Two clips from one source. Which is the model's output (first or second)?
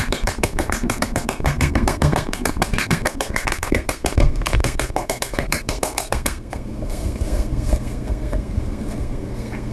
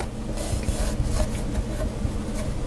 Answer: first